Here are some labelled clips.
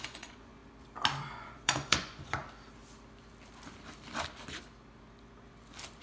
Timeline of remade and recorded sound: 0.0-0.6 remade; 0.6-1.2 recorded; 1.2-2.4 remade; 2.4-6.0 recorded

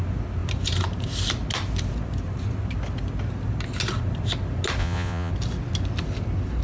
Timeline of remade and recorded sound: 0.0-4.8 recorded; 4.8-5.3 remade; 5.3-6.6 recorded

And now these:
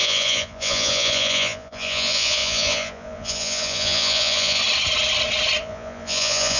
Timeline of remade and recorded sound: 0.0-4.6 remade; 4.6-5.6 recorded; 5.6-6.6 remade

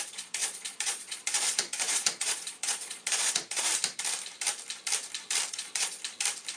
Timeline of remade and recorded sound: 0.0-3.7 remade; 3.7-5.5 recorded; 5.5-6.0 remade; 6.0-6.6 recorded